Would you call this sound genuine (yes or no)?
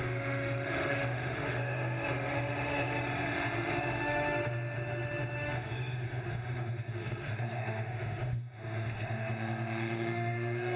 no